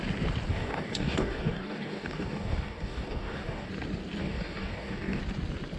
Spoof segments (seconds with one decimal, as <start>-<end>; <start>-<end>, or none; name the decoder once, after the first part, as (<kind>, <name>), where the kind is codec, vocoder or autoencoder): 0.5-3.7 (codec, DAC); 4.2-5.2